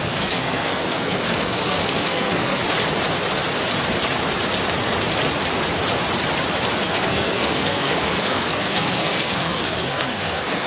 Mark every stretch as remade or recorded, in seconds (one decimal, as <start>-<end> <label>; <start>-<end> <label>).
0.0-2.6 remade; 2.6-6.8 recorded; 6.8-10.7 remade